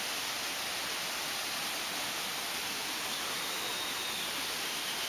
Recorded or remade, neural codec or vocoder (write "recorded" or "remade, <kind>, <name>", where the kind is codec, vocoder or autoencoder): recorded